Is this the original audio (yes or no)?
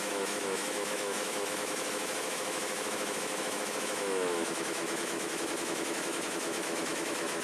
no